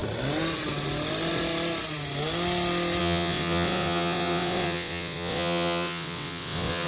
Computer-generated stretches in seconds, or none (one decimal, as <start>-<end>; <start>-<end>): 3.0-6.9